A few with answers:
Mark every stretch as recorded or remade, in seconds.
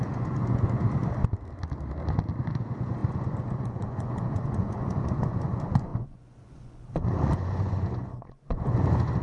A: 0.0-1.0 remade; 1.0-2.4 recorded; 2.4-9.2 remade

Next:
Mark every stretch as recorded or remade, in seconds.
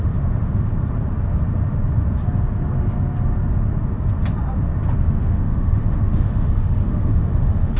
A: 0.0-0.7 remade; 0.7-5.0 recorded; 5.0-7.8 remade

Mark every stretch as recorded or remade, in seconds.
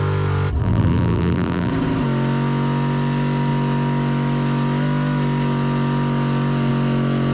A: 0.0-0.6 recorded; 0.6-1.7 remade; 1.7-7.3 recorded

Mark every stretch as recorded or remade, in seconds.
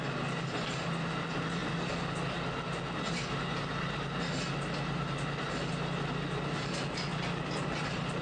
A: 0.0-8.2 recorded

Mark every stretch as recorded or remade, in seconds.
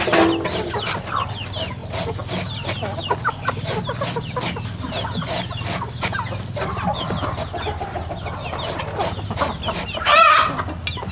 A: 0.0-11.1 recorded